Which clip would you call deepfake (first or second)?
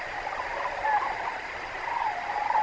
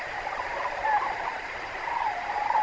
second